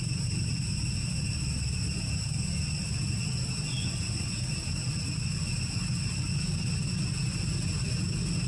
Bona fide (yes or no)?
yes